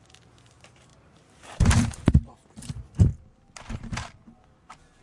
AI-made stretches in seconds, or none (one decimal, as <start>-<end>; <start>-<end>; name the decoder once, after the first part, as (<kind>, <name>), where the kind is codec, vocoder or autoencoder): 0.9-2.3 (vocoder, BigVGAN v2)